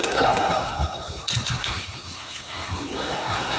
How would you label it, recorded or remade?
remade